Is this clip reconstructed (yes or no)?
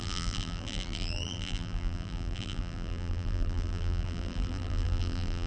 yes